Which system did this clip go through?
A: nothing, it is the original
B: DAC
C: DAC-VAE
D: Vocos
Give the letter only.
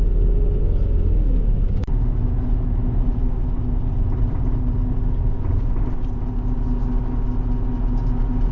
A